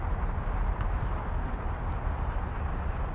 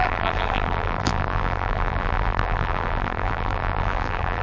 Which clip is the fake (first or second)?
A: second